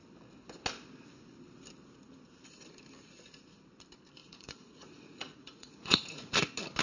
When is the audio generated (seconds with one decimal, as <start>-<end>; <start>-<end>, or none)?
4.2-6.3